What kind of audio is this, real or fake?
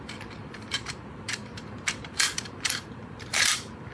fake